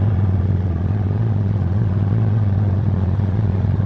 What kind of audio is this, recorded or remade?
remade